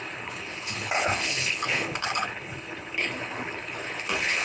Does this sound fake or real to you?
fake